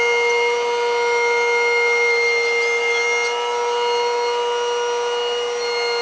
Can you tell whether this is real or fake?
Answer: real